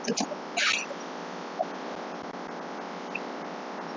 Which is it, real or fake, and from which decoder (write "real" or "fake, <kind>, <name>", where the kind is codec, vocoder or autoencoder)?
real